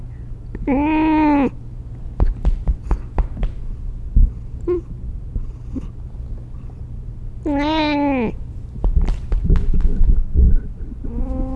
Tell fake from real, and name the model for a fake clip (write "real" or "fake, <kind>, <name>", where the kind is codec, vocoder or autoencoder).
real